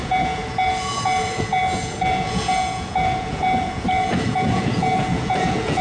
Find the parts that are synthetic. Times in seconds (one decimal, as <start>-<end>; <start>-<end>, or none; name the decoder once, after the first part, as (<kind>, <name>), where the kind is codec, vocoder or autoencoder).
0.0-5.8 (vocoder, Vocos)